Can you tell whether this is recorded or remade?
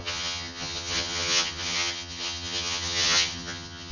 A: remade